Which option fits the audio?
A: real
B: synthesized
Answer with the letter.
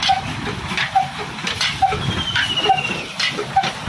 A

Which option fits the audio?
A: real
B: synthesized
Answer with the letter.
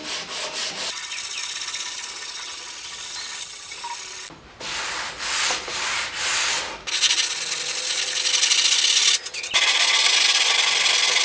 A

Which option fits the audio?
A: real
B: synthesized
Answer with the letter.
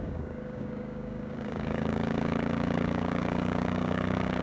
B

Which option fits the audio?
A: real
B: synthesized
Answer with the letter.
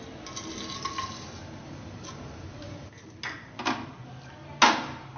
A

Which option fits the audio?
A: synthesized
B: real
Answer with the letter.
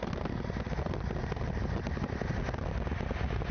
B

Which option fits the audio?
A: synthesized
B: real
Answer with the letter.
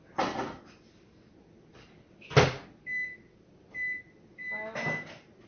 B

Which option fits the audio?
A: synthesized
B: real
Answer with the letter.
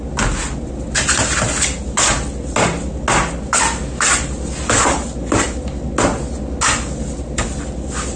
B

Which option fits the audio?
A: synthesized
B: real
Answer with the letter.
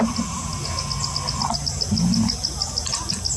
B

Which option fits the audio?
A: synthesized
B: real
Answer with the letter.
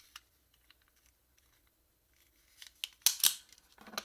B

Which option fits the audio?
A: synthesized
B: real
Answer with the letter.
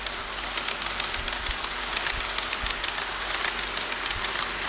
B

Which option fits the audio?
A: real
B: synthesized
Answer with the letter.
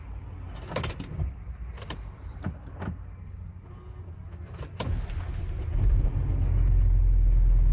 A